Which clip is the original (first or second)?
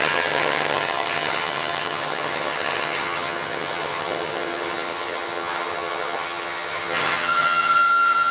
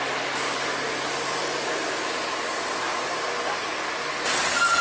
second